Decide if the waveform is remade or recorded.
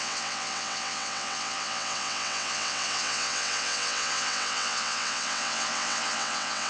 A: remade